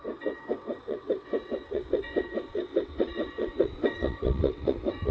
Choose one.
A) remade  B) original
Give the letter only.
A